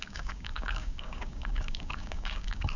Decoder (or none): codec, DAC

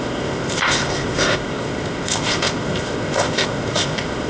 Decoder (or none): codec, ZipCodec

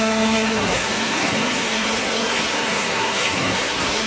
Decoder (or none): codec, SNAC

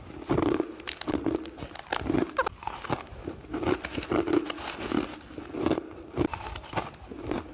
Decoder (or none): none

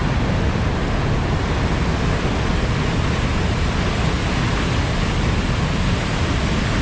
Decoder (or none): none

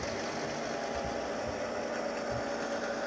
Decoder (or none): none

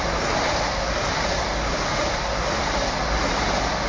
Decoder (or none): none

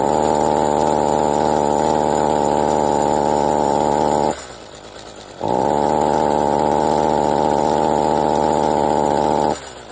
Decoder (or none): none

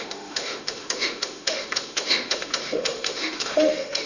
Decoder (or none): autoencoder, DAC-VAE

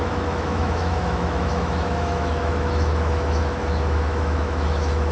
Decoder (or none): autoencoder, DAC-VAE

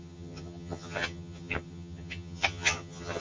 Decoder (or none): vocoder, HiFi-GAN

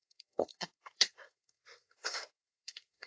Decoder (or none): codec, SNAC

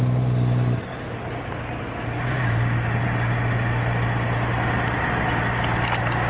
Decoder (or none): none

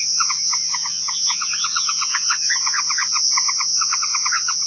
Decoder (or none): vocoder, Vocos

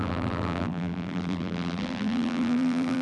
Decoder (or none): vocoder, BigVGAN v2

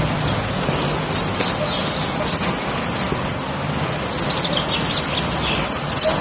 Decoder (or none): none